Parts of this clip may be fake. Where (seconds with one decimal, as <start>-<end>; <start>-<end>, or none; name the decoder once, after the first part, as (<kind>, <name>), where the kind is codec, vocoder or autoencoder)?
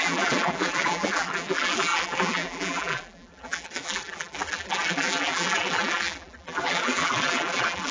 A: 0.0-7.9 (vocoder, BigVGAN v2)